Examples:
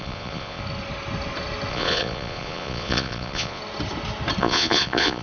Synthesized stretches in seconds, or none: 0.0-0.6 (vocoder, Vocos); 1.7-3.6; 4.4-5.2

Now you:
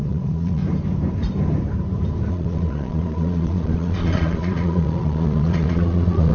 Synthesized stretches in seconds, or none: 0.0-0.6 (vocoder, Vocos); 2.3-6.3

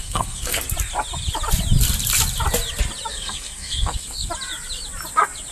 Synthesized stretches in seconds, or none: 0.0-0.6 (codec, SNAC); 3.1-4.3

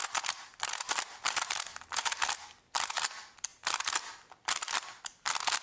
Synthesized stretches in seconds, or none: 0.0-1.8 (vocoder, BigVGAN v2)

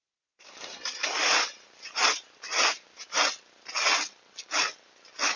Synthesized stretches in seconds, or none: 0.0-3.2 (vocoder, BigVGAN v2)

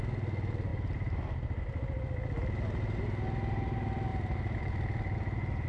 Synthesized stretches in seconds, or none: 0.7-1.6 (vocoder, BigVGAN v2); 4.1-4.7